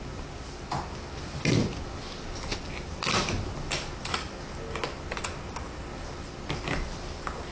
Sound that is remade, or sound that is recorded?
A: recorded